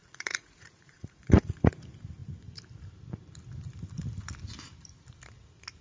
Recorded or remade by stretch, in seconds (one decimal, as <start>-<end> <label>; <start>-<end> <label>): 0.0-1.8 remade; 1.8-5.8 recorded